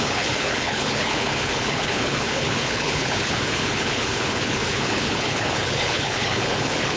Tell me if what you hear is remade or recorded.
remade